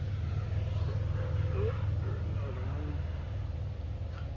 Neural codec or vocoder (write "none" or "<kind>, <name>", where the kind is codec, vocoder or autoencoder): none